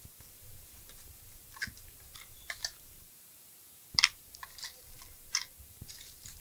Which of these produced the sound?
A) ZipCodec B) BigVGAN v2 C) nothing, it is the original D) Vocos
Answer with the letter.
B